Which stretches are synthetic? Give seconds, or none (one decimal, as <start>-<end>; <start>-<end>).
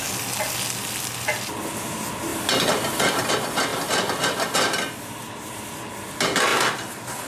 none